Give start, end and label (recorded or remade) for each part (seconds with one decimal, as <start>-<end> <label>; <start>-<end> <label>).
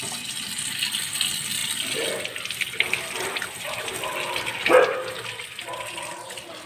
0.0-6.7 recorded